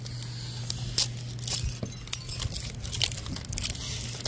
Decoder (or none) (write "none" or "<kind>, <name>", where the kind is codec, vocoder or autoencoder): none